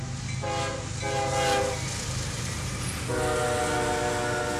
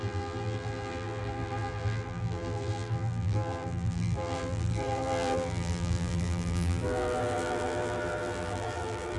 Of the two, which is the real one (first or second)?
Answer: first